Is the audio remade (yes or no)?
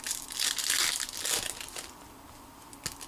no